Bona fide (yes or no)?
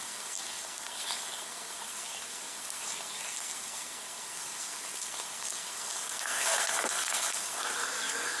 no